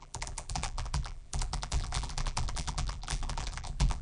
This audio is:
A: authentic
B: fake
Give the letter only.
B